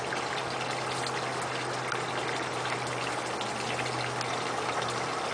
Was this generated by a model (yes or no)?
no